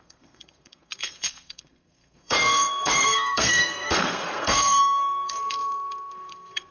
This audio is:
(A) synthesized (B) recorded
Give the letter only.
A